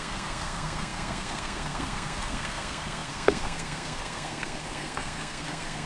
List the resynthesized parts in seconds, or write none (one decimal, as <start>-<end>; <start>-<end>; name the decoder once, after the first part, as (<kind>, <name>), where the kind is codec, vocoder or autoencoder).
0.0-5.9 (codec, SNAC)